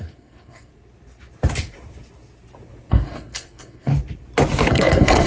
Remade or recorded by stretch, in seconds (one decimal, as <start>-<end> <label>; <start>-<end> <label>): 0.0-0.7 remade; 0.7-2.9 recorded; 2.9-3.9 remade; 3.9-4.7 recorded; 4.7-5.3 remade